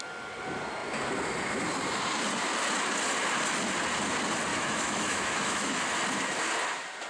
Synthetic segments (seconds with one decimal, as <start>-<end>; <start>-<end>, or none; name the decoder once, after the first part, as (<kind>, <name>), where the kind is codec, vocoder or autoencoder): 4.5-5.8 (autoencoder, DAC-VAE)